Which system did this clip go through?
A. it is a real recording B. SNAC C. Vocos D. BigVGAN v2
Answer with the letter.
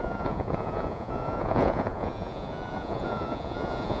C